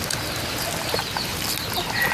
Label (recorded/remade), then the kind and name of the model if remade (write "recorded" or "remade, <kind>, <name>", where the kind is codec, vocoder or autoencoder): recorded